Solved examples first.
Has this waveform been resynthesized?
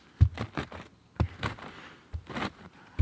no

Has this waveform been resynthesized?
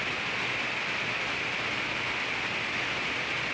no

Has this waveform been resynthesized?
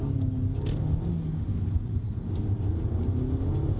no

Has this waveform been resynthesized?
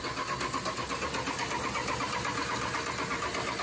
no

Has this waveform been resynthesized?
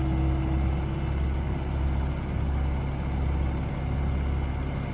no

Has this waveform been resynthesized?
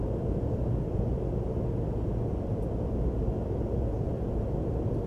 no